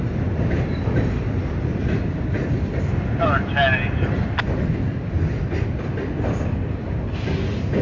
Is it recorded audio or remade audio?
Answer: recorded